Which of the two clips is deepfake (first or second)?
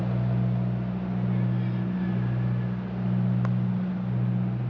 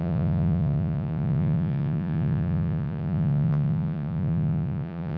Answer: second